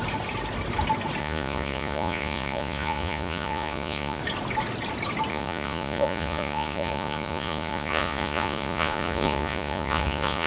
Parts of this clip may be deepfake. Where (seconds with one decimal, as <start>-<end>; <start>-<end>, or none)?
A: 1.2-4.2; 5.3-10.5